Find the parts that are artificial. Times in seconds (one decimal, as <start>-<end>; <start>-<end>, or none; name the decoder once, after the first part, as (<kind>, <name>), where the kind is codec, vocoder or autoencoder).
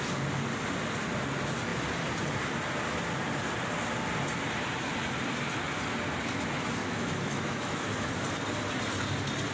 6.8-8.1 (autoencoder, DAC-VAE)